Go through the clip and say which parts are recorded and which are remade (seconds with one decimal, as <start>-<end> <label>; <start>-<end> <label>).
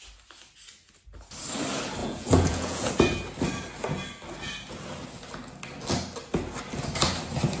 0.0-2.0 recorded; 2.0-2.9 remade; 2.9-7.6 recorded